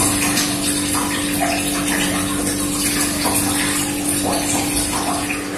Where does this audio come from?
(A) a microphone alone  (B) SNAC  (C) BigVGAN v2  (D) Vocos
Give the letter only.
A